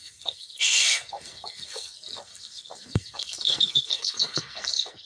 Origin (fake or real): fake